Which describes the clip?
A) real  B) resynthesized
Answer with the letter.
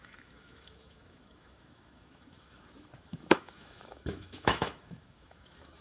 B